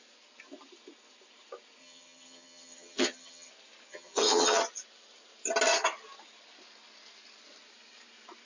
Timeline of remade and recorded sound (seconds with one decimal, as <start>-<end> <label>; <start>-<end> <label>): 0.0-1.8 recorded; 1.8-3.5 remade; 3.5-3.9 recorded; 3.9-4.6 remade; 4.6-8.5 recorded